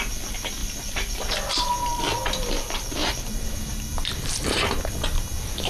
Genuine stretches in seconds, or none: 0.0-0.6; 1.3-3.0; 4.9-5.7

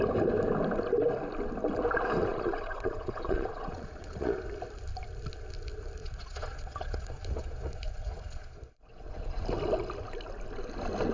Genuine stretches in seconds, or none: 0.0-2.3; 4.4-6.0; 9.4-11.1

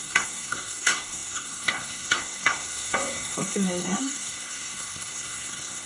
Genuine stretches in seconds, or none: none